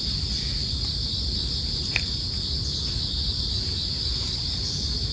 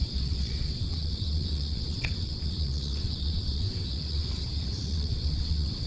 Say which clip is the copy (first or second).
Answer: second